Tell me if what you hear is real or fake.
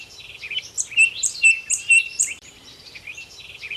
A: fake